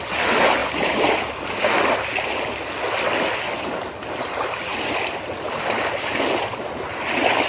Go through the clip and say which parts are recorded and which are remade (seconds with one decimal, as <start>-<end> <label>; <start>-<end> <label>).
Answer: 0.0-0.6 recorded; 0.6-3.6 remade; 3.6-4.7 recorded; 4.7-6.7 remade; 6.7-7.5 recorded